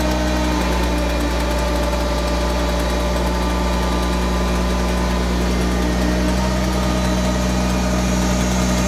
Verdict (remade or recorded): recorded